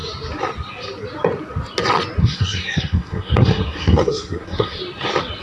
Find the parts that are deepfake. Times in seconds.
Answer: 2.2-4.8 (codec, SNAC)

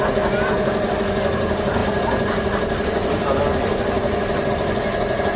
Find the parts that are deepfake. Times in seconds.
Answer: none

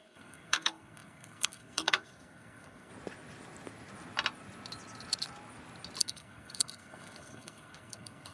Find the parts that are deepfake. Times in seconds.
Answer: 0.0-2.9 (codec, SNAC); 6.0-8.3

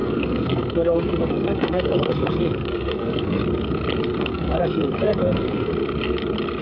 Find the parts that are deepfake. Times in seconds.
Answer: 0.0-3.4 (codec, SNAC); 4.2-5.7

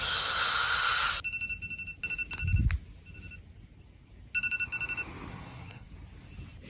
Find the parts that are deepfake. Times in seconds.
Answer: 5.3-5.9 (codec, SNAC)

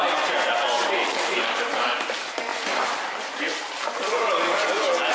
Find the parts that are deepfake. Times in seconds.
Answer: none